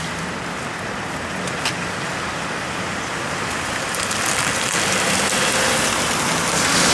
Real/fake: real